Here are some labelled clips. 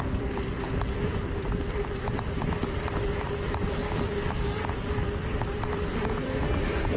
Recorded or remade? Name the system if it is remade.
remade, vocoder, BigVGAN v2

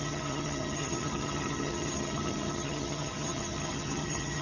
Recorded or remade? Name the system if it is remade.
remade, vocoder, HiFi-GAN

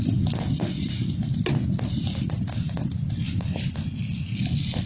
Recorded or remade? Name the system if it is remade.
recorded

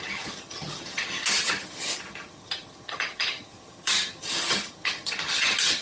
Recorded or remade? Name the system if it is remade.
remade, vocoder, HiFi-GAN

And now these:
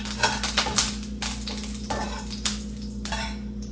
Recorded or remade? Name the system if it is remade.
recorded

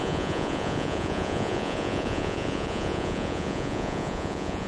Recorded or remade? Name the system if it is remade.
remade, vocoder, Vocos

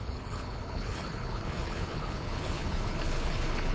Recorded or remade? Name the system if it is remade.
remade, codec, HILCodec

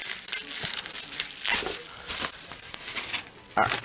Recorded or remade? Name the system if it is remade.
recorded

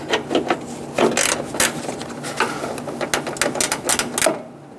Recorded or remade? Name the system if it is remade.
recorded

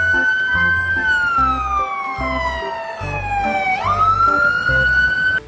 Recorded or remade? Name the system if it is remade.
recorded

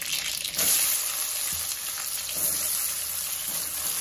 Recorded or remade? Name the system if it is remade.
recorded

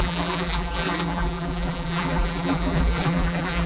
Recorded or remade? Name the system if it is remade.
remade, vocoder, BigVGAN v2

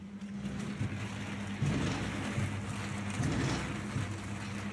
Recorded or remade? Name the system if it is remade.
recorded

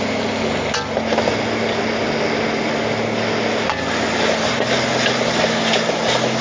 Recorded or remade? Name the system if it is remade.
recorded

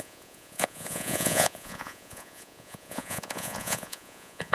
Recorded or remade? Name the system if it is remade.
remade, vocoder, Vocos